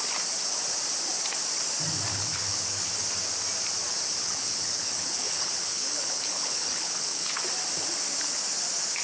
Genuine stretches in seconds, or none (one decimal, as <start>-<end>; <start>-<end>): 0.0-2.1; 2.9-4.2; 7.4-9.0